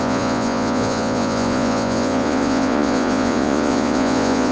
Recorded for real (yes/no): no